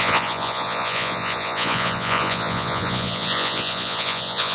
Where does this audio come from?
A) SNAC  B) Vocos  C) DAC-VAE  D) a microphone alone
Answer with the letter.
B